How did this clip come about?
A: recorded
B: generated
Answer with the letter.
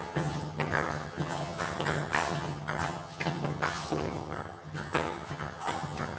B